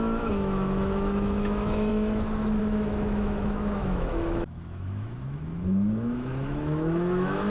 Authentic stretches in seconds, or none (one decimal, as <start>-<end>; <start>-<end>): none

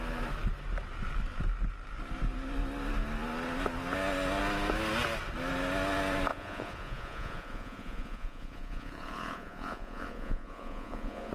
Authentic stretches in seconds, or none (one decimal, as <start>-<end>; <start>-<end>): 0.0-6.3